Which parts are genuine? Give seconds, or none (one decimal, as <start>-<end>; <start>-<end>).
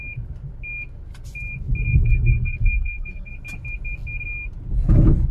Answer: 0.0-2.0; 3.3-5.3